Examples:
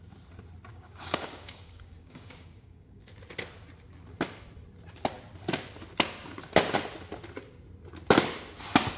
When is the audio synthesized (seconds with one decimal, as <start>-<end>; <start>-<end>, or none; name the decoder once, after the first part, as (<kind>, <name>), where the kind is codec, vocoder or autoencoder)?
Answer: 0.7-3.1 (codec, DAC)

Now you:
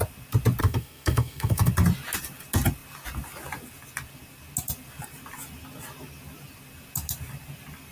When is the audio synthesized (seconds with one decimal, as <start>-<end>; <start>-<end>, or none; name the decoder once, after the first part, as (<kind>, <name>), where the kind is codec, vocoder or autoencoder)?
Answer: 0.6-1.7 (codec, SNAC)

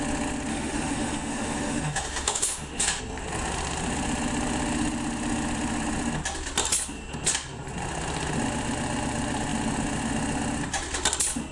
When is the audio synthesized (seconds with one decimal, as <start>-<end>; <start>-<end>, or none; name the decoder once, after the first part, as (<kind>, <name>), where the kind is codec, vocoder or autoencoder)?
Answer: 0.5-3.0 (autoencoder, DAC-VAE)

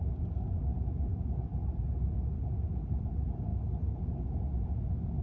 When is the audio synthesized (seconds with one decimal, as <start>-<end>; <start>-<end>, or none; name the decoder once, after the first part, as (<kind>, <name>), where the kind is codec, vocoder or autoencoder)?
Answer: 0.0-3.5 (vocoder, BigVGAN v2); 4.2-5.2

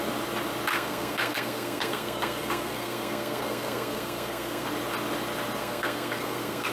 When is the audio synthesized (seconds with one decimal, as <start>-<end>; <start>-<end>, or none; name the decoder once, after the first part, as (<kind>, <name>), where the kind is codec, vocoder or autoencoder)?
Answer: 0.7-4.7 (codec, SNAC); 5.6-6.7